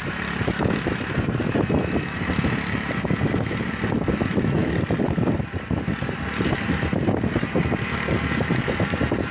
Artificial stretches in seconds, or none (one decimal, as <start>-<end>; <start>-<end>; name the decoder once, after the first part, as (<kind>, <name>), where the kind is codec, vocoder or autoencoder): none